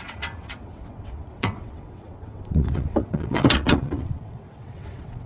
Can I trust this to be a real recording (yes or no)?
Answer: no